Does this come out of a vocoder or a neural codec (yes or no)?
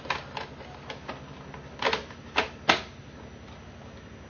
no